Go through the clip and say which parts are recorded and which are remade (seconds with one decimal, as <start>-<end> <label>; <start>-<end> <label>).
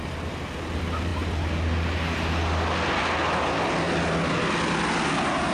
0.0-5.5 recorded